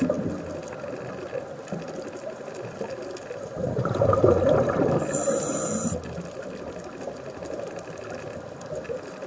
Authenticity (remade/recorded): recorded